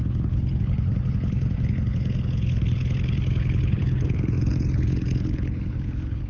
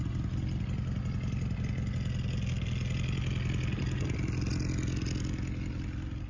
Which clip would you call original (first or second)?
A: second